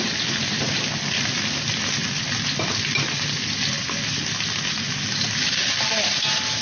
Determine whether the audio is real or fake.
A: real